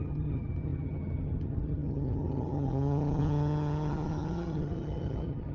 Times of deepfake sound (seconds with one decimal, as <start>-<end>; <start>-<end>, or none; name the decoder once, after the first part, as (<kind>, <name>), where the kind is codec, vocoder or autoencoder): 0.0-5.5 (vocoder, HiFi-GAN)